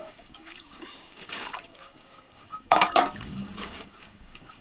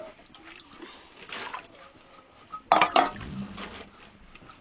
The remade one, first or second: first